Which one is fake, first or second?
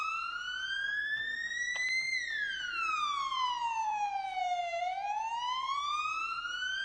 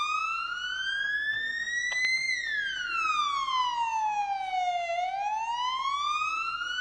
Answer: first